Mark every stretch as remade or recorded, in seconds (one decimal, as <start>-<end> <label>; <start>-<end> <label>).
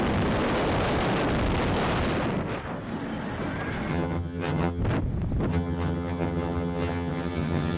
0.0-3.9 recorded; 3.9-4.8 remade; 4.8-5.5 recorded; 5.5-7.8 remade